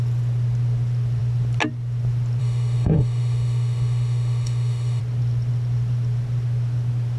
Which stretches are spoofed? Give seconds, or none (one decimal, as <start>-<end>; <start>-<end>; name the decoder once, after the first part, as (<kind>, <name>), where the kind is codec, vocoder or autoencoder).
2.4-5.0 (autoencoder, DAC-VAE)